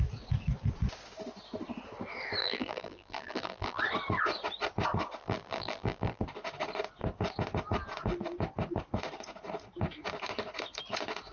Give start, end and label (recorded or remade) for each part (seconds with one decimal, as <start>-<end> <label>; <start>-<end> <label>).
0.0-2.4 recorded; 2.4-3.8 remade; 3.8-5.2 recorded; 5.2-6.2 remade; 6.2-11.3 recorded